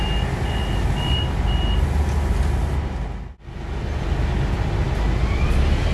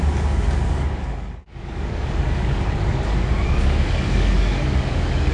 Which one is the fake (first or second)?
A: second